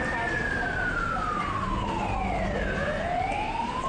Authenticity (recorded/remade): recorded